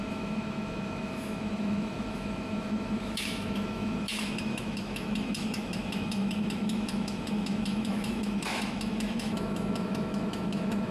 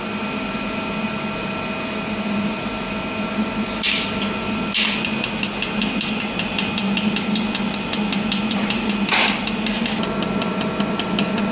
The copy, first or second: first